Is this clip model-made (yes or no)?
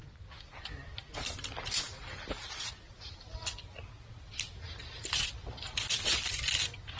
no